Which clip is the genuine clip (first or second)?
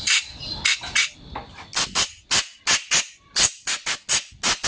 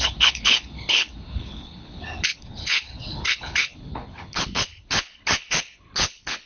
first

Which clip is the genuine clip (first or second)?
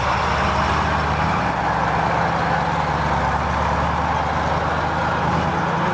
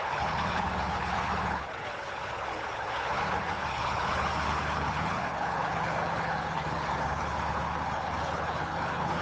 first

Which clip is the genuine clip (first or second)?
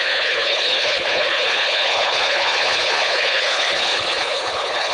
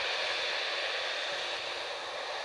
second